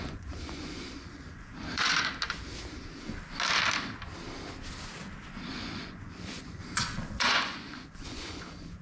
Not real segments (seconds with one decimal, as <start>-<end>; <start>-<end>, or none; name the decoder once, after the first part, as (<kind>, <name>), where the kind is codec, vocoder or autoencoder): 0.0-2.1 (vocoder, Vocos); 5.5-8.8